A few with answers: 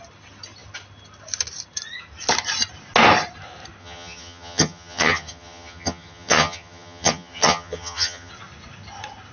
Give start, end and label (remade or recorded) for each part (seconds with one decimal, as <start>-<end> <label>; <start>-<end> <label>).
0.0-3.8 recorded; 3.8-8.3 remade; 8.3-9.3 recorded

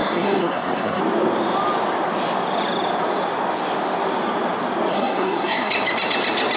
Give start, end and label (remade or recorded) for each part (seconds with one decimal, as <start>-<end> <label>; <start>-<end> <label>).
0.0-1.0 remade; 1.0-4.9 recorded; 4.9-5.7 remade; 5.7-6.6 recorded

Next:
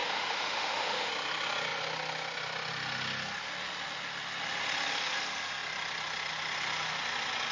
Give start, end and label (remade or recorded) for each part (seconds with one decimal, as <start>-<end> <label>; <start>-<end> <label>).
0.0-1.1 remade; 1.1-7.5 recorded